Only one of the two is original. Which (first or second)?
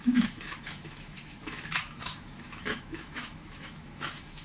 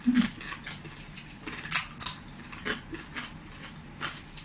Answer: second